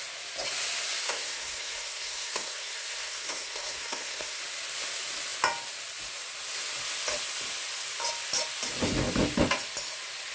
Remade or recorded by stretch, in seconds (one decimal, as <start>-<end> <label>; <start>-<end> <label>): 0.0-1.0 recorded; 1.0-4.4 remade; 4.4-10.3 recorded